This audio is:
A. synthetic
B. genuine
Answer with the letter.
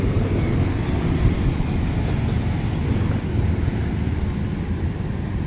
B